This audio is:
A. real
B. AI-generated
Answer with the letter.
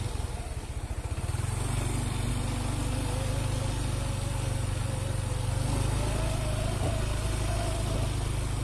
A